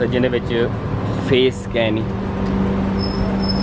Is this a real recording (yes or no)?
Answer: yes